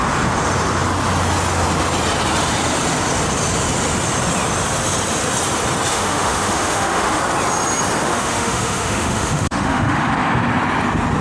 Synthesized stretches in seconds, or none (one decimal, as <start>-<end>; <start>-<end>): 5.9-7.2; 8.0-10.1